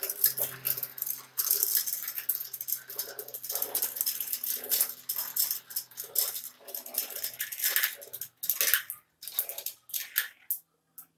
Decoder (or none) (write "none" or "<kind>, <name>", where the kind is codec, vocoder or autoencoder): none